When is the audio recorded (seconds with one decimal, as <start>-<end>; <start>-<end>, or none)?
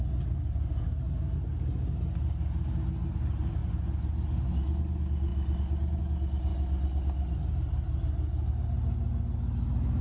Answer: 0.0-3.6; 4.4-10.0